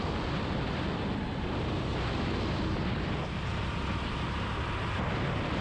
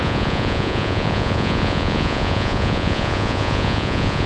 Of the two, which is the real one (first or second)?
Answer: first